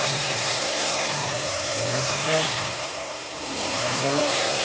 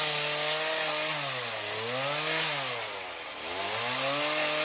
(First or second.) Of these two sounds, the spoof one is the first